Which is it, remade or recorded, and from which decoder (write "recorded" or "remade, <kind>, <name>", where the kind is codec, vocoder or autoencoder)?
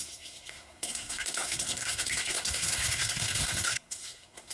remade, codec, SNAC